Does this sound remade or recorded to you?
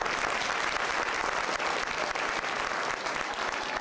recorded